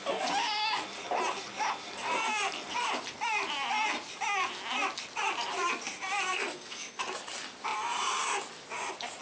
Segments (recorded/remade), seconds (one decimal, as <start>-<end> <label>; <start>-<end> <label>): 0.0-6.3 recorded; 6.3-7.0 remade; 7.0-9.2 recorded